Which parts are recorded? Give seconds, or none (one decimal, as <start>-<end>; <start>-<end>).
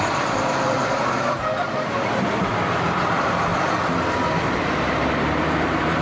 3.5-4.3